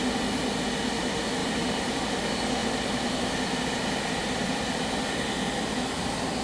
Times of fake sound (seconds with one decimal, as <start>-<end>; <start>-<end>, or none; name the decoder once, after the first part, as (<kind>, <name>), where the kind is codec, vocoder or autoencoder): 1.4-2.0 (vocoder, BigVGAN v2); 2.6-4.3